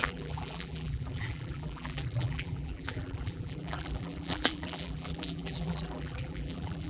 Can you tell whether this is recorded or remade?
remade